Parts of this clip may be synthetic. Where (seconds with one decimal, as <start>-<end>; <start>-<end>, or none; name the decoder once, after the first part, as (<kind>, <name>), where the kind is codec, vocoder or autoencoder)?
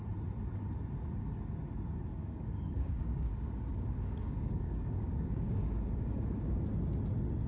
2.1-6.6 (codec, DAC)